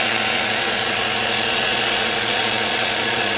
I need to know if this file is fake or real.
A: fake